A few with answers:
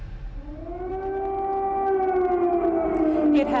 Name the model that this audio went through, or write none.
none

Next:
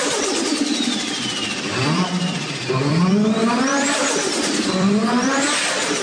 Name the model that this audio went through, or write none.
vocoder, BigVGAN v2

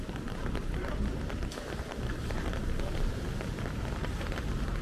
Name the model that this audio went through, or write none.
vocoder, BigVGAN v2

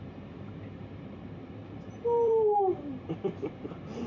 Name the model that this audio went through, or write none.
vocoder, BigVGAN v2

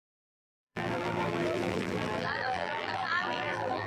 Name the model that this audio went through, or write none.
vocoder, BigVGAN v2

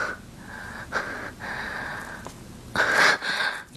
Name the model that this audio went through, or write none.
none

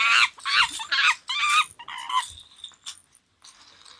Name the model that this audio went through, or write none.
none